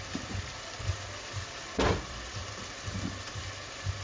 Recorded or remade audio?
recorded